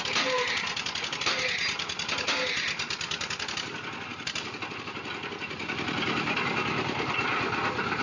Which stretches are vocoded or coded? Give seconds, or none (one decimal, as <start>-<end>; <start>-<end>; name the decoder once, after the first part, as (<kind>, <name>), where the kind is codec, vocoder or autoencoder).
none